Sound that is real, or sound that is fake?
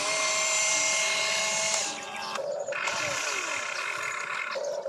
real